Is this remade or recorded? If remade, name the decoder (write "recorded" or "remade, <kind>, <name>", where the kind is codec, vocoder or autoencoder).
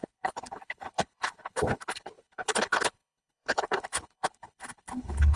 remade, codec, HILCodec